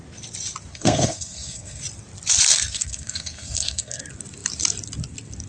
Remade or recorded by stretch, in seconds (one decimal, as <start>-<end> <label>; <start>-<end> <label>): 0.0-0.7 recorded; 0.7-1.8 remade; 1.8-2.5 recorded; 2.5-4.0 remade; 4.0-5.5 recorded